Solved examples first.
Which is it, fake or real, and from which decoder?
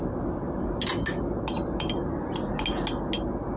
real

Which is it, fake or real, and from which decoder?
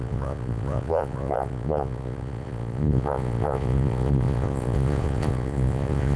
fake, vocoder, Vocos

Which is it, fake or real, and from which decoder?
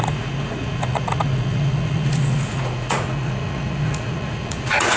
fake, vocoder, Vocos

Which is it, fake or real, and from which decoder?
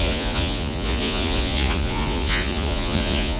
fake, vocoder, Vocos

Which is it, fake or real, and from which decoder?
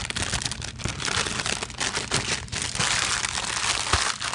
real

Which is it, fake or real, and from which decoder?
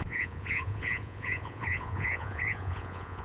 fake, vocoder, Vocos